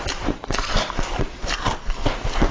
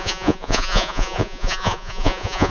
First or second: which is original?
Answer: first